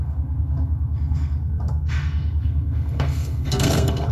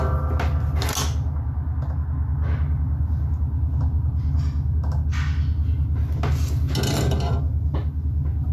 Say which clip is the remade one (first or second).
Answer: first